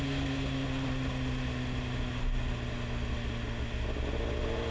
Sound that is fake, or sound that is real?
real